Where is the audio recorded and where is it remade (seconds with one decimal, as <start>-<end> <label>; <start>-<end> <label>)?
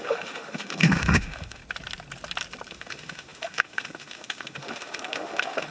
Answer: 0.0-1.6 remade; 1.6-2.7 recorded; 2.7-5.7 remade